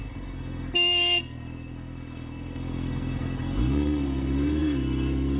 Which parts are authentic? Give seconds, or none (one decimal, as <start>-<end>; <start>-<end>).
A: none